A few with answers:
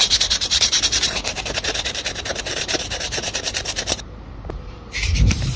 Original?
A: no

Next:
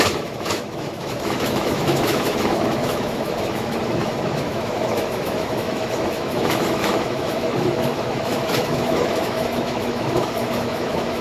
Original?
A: no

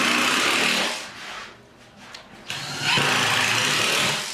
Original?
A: yes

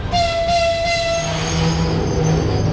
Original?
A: yes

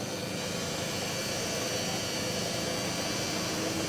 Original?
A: yes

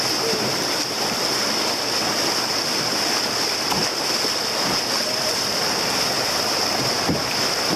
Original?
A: no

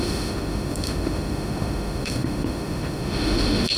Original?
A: no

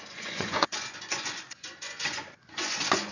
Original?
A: no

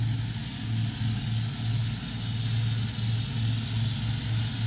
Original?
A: yes